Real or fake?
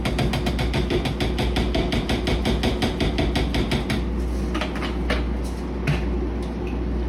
real